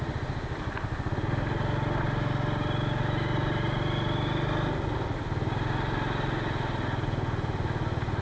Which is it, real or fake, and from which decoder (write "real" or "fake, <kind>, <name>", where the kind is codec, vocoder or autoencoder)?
real